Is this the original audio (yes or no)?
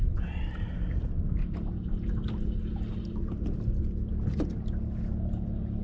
yes